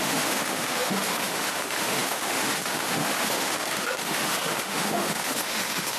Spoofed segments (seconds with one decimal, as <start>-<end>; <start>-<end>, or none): 0.0-6.0